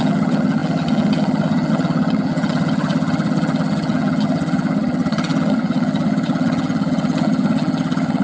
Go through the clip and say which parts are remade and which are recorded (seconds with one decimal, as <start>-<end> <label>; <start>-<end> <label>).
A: 0.0-8.2 remade